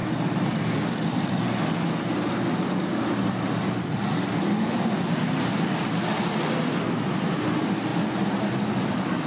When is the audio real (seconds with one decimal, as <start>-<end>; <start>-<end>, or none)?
1.4-2.9; 6.6-9.3